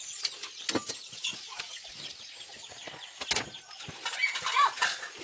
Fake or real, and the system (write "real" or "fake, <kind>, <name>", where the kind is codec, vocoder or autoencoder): real